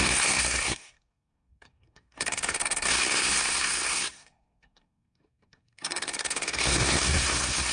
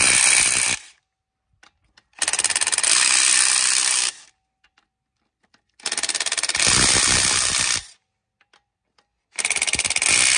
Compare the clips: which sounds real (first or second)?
second